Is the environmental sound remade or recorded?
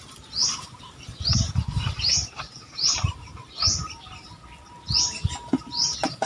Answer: remade